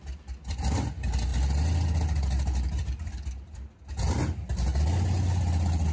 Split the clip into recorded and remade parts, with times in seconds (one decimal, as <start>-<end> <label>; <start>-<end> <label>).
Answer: 0.0-5.9 recorded